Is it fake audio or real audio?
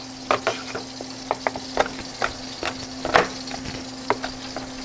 real